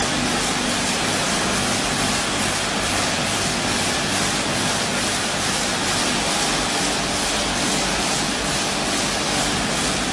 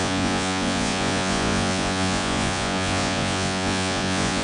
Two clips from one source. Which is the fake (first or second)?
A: second